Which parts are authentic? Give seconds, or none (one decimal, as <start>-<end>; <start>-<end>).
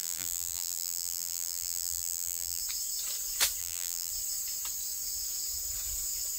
2.6-3.6; 4.1-6.4